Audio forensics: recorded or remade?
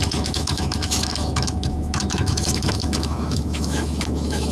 remade